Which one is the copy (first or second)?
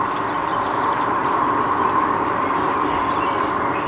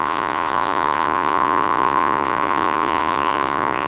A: second